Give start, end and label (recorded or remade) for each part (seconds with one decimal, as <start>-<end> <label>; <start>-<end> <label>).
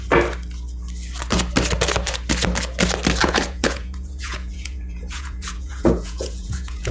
0.0-3.2 recorded; 3.2-6.9 remade